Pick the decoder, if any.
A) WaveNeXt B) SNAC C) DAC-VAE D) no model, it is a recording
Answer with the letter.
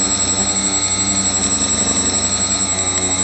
D